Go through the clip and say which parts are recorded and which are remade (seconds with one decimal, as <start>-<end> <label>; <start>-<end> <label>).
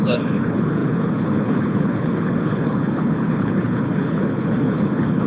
0.0-5.3 remade